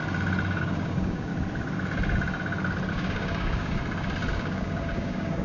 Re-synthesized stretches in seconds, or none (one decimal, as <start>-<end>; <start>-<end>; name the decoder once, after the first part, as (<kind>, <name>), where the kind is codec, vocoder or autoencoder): 0.6-1.3 (codec, DAC); 2.9-3.8; 4.3-5.4